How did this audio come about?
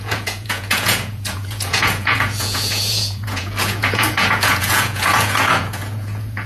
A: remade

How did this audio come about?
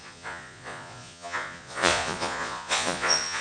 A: remade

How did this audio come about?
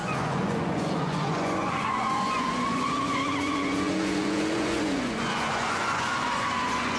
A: remade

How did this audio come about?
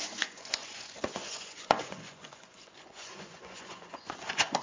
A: remade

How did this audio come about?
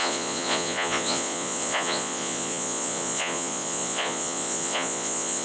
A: remade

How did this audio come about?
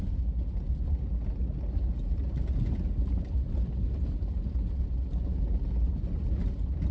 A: recorded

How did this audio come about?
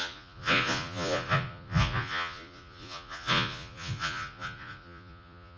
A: remade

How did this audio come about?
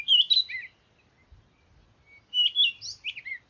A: recorded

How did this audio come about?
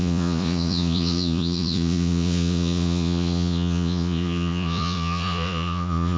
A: remade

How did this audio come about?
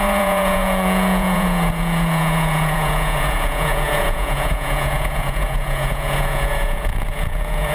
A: remade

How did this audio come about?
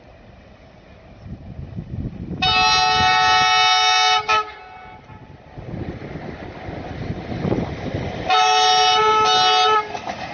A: recorded